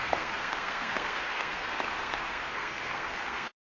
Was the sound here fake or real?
fake